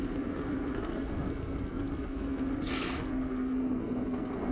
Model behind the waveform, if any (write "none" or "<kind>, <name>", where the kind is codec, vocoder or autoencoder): codec, SNAC